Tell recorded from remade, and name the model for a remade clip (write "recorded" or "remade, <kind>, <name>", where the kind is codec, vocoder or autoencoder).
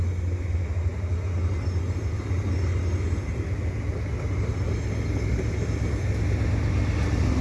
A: recorded